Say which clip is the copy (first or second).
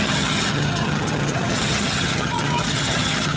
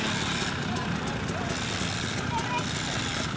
first